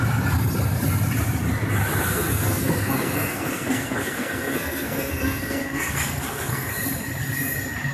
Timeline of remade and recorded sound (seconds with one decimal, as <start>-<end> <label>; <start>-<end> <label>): 0.0-2.0 recorded; 2.0-6.7 remade; 6.7-7.9 recorded